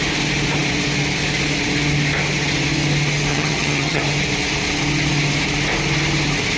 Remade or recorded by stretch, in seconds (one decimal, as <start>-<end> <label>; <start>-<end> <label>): 0.0-3.3 recorded; 3.3-4.0 remade; 4.0-6.6 recorded